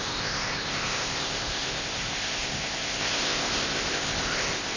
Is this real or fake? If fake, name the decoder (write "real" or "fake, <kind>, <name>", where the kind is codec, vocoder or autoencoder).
fake, codec, ZipCodec